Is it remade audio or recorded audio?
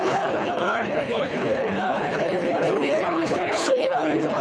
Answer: remade